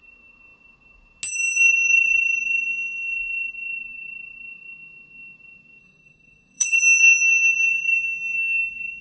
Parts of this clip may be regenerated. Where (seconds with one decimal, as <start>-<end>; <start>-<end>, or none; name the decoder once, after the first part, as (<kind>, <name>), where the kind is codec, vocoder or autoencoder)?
5.8-6.8 (codec, SNAC)

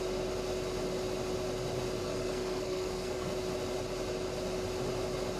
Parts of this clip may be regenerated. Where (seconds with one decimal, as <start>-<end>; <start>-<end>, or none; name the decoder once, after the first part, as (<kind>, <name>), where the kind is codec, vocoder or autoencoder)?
2.0-3.3 (codec, SNAC)

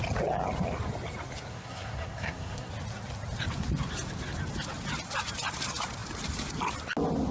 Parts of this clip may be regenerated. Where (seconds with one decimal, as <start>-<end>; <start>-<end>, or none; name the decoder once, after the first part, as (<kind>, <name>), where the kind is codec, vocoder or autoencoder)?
1.5-2.7 (codec, SNAC)

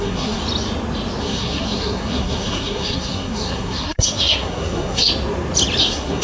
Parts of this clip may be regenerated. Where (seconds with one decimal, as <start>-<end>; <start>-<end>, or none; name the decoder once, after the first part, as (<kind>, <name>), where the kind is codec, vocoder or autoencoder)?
0.0-0.4 (codec, SNAC); 1.2-5.1; 5.8-6.2

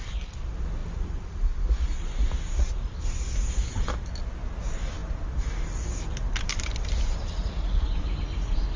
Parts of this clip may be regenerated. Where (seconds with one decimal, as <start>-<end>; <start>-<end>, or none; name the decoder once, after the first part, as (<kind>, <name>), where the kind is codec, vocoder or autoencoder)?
none

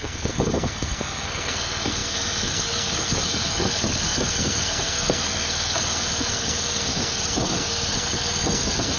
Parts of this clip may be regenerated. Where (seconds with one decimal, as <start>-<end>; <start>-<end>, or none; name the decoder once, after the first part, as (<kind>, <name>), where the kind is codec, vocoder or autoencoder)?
0.0-9.0 (codec, SNAC)